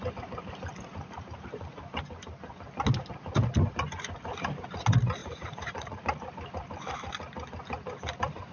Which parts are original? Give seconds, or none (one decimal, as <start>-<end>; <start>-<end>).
0.0-0.9; 1.8-5.2; 6.0-8.5